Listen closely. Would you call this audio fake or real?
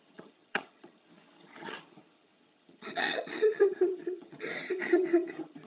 fake